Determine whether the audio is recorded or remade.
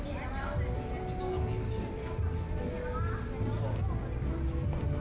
recorded